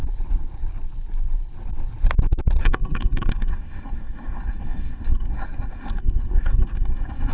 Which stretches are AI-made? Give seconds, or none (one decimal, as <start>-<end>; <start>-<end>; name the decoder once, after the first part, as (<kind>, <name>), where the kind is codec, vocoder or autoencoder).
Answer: 2.6-7.3 (codec, SNAC)